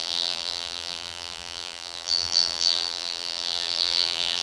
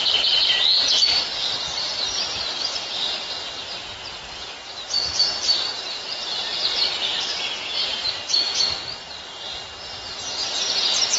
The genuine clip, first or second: second